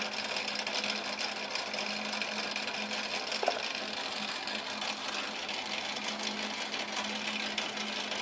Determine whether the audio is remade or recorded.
recorded